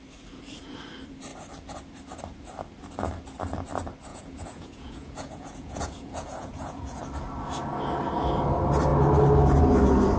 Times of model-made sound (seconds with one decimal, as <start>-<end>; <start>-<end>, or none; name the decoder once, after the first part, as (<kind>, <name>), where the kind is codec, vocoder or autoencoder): 4.1-7.0 (vocoder, Vocos)